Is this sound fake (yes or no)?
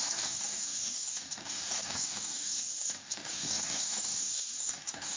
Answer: yes